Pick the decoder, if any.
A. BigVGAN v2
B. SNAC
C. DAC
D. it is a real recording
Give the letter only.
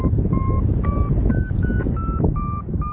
D